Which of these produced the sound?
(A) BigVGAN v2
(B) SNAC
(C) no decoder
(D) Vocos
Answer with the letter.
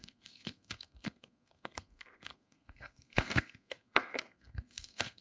B